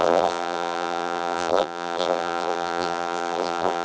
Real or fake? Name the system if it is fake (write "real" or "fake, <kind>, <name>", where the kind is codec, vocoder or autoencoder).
fake, vocoder, BigVGAN v2